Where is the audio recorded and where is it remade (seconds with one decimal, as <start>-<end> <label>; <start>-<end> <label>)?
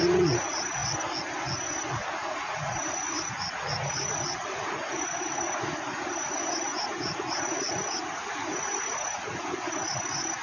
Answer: 0.0-0.8 remade; 0.8-1.9 recorded; 1.9-10.4 remade